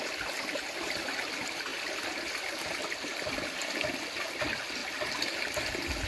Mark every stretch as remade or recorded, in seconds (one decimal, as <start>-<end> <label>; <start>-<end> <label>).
0.0-6.1 recorded